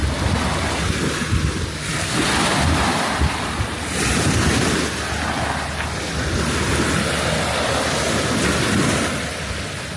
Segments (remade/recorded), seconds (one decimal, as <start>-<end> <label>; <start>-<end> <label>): 0.0-10.0 recorded